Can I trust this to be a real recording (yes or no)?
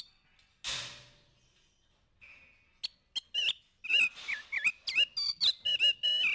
yes